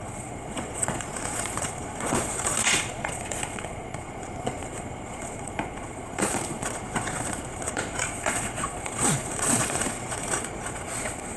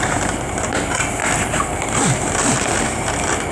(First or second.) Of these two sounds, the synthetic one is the first